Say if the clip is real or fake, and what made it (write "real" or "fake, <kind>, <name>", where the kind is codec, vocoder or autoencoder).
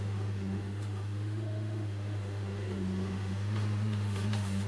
fake, autoencoder, DAC-VAE